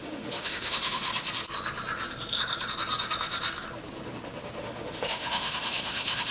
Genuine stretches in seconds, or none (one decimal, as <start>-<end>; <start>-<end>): 1.1-4.6